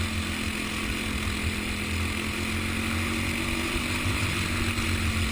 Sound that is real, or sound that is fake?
real